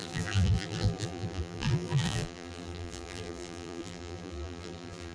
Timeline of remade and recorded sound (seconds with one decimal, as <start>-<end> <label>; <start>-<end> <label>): 0.0-5.1 remade